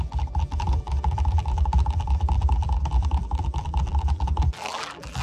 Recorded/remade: remade